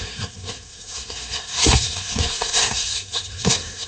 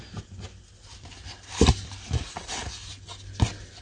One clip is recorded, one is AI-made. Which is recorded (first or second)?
second